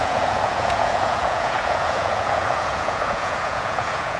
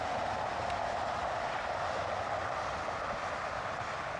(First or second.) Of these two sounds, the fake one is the first